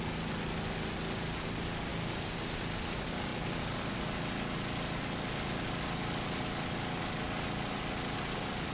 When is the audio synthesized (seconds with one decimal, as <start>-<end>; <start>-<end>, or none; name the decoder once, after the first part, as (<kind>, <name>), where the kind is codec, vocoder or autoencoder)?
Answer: 1.9-2.6 (codec, DAC)